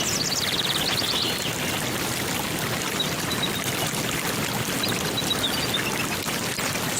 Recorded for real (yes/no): yes